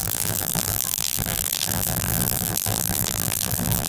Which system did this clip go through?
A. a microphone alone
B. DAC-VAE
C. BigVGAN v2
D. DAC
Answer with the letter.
C